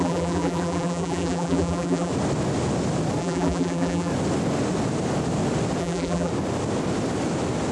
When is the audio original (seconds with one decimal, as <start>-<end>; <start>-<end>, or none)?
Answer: 2.1-3.2; 4.1-5.8; 6.3-7.7